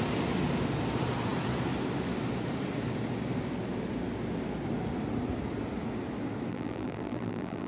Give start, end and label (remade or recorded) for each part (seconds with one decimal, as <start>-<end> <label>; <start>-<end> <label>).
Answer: 0.0-6.5 recorded; 6.5-7.7 remade